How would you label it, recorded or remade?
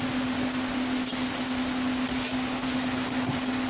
recorded